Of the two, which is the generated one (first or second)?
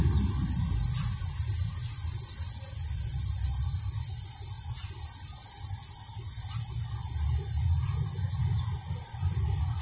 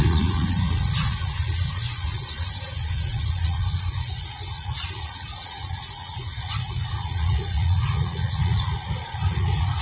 second